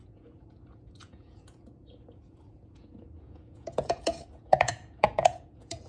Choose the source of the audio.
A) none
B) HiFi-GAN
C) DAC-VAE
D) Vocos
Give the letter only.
D